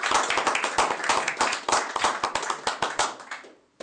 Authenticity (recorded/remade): recorded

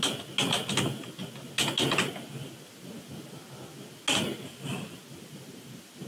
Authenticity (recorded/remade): recorded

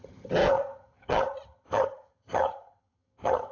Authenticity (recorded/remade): remade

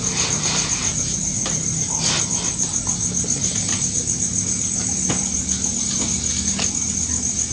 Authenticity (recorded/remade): recorded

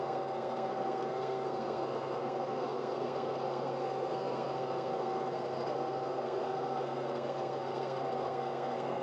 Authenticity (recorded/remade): remade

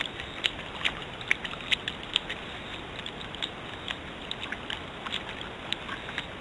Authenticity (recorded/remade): recorded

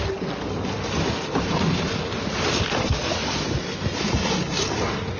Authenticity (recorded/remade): recorded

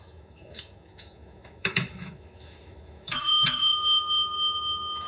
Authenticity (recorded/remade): remade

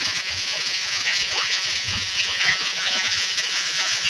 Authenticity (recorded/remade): remade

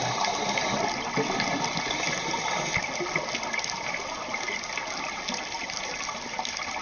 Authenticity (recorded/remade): recorded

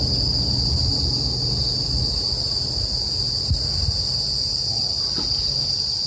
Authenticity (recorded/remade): recorded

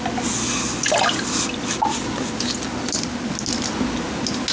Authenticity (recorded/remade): recorded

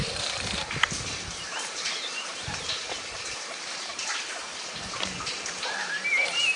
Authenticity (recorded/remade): remade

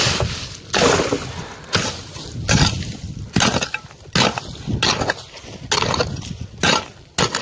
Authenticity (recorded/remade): recorded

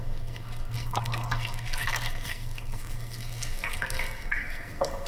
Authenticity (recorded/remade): remade